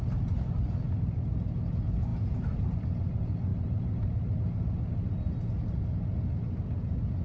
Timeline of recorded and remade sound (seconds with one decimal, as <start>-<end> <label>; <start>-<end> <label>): 0.0-2.1 recorded; 2.1-2.8 remade; 2.8-3.5 recorded; 3.5-4.4 remade; 4.4-7.2 recorded